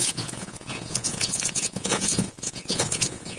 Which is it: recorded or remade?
remade